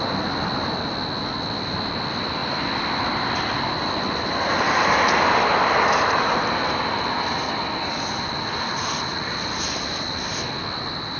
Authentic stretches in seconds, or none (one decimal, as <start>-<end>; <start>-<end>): 0.0-11.2